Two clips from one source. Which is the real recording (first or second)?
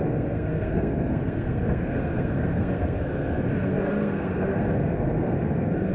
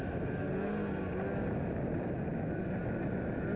second